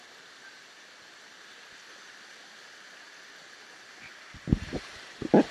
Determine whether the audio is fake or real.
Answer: real